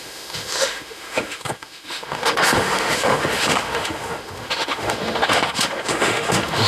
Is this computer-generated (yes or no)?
yes